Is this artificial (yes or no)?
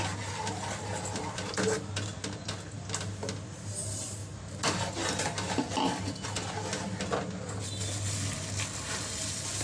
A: no